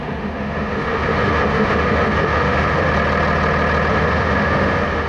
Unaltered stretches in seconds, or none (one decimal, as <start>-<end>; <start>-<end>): 2.9-3.9